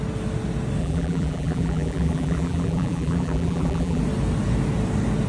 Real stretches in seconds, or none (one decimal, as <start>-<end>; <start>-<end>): 0.0-0.8; 4.0-5.3

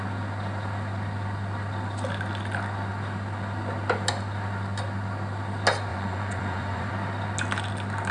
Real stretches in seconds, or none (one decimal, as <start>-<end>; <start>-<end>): 0.0-5.9; 6.9-8.1